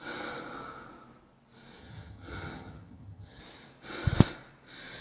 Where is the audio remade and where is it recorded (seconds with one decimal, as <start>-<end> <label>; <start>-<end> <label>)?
0.0-1.8 recorded; 1.8-3.4 remade; 3.4-5.0 recorded

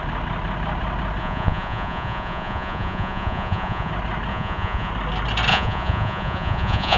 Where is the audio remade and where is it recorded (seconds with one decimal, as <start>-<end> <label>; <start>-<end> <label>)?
0.0-1.2 recorded; 1.2-3.9 remade; 3.9-4.3 recorded; 4.3-4.9 remade; 4.9-5.5 recorded; 5.5-7.0 remade

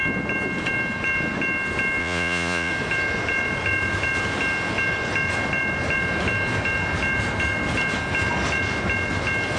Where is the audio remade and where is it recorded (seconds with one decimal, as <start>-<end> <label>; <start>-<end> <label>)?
0.0-2.0 recorded; 2.0-2.7 remade; 2.7-9.6 recorded

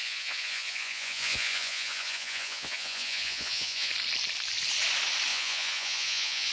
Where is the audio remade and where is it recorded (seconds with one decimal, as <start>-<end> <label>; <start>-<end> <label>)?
0.0-3.9 remade; 3.9-5.3 recorded; 5.3-6.5 remade

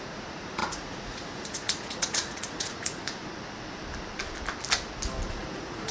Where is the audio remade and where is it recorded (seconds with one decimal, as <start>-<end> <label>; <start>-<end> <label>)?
0.0-3.2 remade; 3.2-5.3 recorded; 5.3-5.9 remade

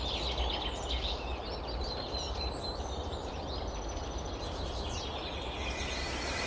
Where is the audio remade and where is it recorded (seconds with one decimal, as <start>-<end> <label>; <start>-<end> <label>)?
0.0-6.5 recorded

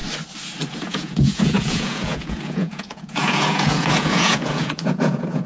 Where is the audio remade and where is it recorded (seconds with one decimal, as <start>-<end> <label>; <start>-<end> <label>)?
0.0-0.7 recorded; 0.7-5.5 remade

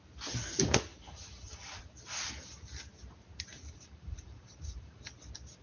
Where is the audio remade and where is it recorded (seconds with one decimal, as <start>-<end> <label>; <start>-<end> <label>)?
0.0-0.9 recorded; 0.9-1.8 remade; 1.8-3.5 recorded; 3.5-5.0 remade; 5.0-5.6 recorded